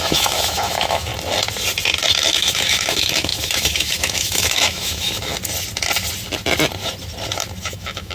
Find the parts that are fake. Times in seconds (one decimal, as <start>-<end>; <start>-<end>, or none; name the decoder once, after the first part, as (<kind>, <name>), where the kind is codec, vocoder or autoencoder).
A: 0.0-1.1 (autoencoder, DAC-VAE); 2.3-5.3; 7.6-8.1